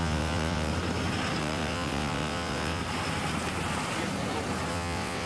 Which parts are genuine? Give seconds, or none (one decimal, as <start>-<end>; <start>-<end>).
0.7-1.4; 2.8-4.7